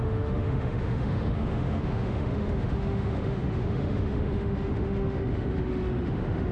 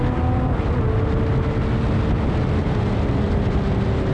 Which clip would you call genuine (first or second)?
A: second